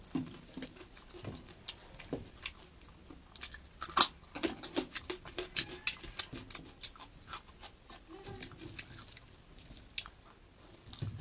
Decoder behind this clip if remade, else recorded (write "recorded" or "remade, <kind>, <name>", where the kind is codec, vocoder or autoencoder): recorded